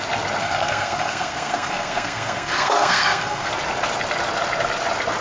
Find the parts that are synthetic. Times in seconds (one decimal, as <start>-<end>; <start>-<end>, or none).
0.4-3.5